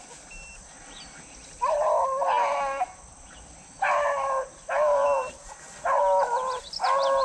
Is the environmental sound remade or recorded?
recorded